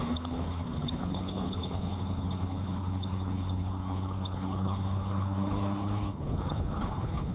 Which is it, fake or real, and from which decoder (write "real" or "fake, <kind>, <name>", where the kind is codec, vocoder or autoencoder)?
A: fake, codec, HILCodec